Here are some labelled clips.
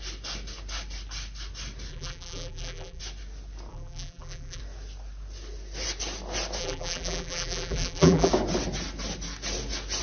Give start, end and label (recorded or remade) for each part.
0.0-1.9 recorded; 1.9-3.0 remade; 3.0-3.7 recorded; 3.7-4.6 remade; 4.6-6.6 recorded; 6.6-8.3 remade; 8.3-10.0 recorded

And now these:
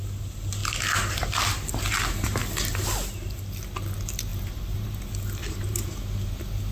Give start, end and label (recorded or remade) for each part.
0.0-4.3 recorded; 4.3-5.0 remade; 5.0-5.4 recorded; 5.4-6.0 remade; 6.0-6.7 recorded

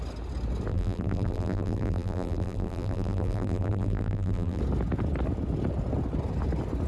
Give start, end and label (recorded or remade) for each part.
0.0-0.7 recorded; 0.7-4.6 remade; 4.6-6.9 recorded

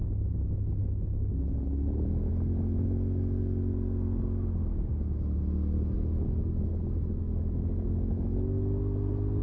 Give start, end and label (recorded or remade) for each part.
0.0-9.4 recorded

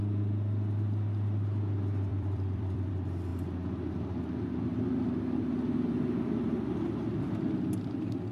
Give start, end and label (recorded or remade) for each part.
0.0-2.1 recorded; 2.1-2.9 remade; 2.9-8.3 recorded

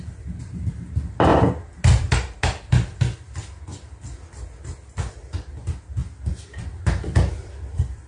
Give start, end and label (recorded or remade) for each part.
0.0-1.3 remade; 1.3-2.7 recorded; 2.7-3.7 remade; 3.7-5.1 recorded; 5.1-6.0 remade; 6.0-6.8 recorded; 6.8-8.1 remade

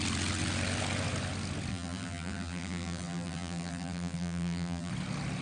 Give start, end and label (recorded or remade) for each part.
0.0-1.7 recorded; 1.7-4.9 remade; 4.9-5.4 recorded